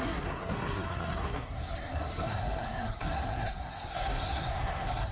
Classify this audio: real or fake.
fake